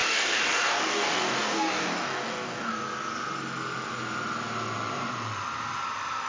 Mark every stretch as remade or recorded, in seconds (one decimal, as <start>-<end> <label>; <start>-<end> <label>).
0.0-2.7 remade; 2.7-6.3 recorded